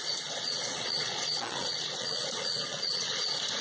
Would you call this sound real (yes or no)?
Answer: no